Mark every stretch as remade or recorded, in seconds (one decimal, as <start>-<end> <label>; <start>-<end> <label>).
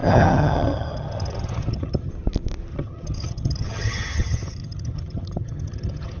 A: 0.0-2.1 remade; 2.1-2.7 recorded; 2.7-6.2 remade